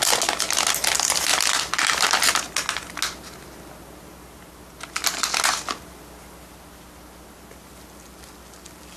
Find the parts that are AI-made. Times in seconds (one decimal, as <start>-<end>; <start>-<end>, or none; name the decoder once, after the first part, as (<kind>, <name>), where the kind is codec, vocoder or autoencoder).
1.3-1.9 (vocoder, BigVGAN v2)